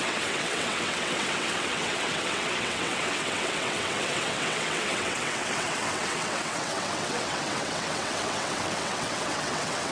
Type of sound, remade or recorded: remade